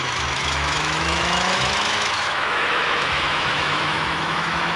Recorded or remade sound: remade